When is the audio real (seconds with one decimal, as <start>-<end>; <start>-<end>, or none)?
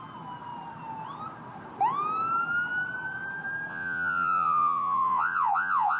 0.0-3.7